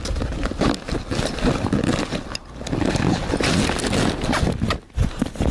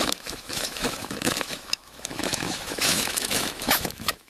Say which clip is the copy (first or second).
second